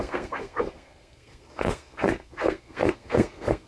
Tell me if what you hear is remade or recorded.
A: remade